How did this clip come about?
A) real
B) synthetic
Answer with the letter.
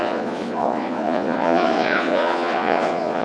B